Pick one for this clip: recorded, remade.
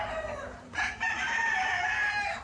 remade